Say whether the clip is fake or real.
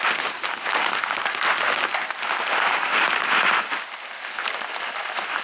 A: real